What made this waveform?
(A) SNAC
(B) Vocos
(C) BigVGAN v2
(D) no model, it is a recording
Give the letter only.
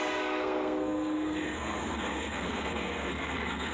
A